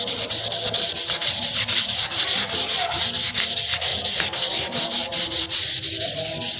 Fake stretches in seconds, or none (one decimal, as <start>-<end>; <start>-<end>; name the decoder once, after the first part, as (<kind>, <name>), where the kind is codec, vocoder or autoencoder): none